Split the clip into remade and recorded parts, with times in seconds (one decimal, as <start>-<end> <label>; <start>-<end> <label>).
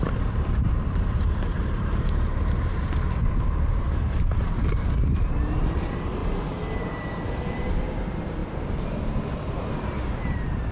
0.0-6.2 remade; 6.2-6.8 recorded; 6.8-10.7 remade